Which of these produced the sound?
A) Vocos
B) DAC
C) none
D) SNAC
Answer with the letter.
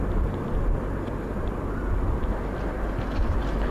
C